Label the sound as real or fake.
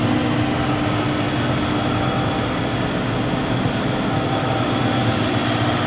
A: real